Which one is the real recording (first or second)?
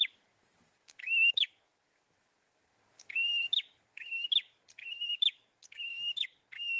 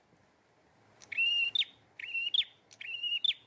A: second